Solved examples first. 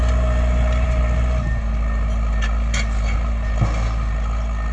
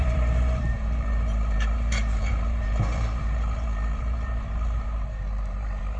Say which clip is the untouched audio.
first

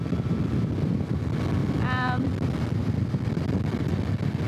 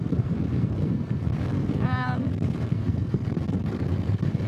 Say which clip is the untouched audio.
first